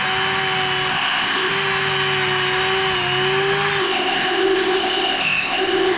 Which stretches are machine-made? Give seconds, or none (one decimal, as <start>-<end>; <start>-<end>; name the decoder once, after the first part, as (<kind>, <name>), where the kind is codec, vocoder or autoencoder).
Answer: 0.9-1.5 (codec, ZipCodec); 3.8-6.0